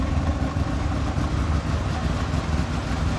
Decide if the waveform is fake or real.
real